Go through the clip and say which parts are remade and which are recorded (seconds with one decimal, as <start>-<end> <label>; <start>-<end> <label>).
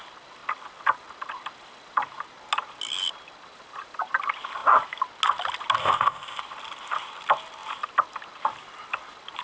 0.0-5.8 recorded; 5.8-6.4 remade; 6.4-9.4 recorded